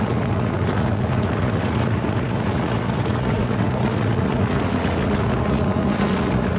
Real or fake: fake